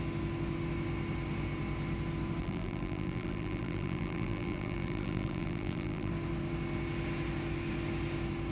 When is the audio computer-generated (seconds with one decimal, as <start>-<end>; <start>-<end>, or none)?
2.4-6.1

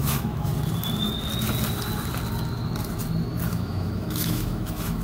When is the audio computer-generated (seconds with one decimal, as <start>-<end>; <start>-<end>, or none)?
0.0-0.5; 3.5-5.0

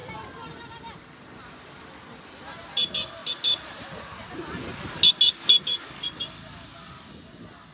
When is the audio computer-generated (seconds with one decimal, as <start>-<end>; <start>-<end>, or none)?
none

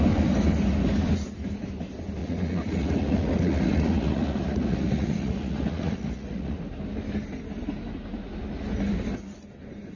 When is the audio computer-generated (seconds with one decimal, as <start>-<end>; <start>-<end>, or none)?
2.2-6.6

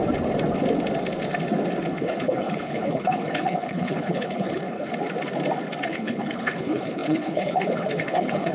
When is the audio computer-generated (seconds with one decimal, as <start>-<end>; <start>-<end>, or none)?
1.8-4.9; 5.9-8.5